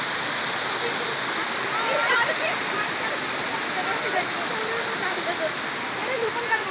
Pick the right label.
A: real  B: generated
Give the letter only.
A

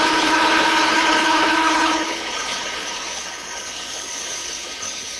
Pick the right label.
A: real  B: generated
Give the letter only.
B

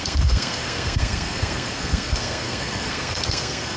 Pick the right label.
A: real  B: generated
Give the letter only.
B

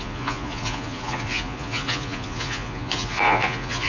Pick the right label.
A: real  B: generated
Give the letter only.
B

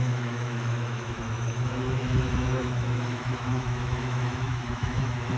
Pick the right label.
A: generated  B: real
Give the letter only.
A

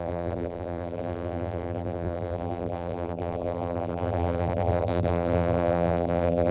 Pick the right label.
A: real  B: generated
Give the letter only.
B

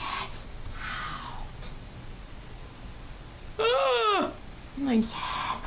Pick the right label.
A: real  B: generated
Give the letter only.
A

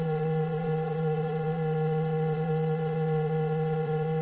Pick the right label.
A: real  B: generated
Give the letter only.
B